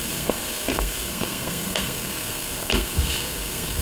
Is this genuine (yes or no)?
no